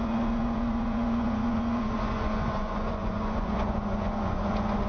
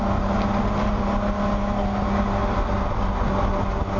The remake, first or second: first